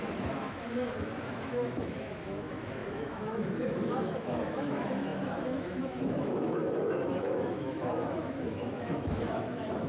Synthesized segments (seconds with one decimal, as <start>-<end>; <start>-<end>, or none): 0.0-9.9